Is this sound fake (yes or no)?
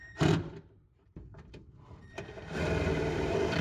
yes